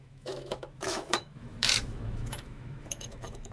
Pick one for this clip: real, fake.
fake